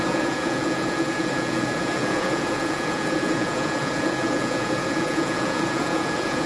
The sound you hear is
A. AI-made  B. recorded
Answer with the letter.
A